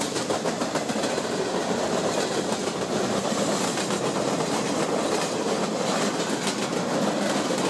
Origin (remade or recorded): recorded